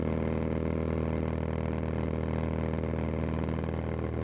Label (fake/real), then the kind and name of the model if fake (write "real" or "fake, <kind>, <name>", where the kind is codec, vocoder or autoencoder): real